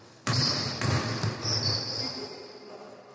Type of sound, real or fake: real